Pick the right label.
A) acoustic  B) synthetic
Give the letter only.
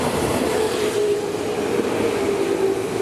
A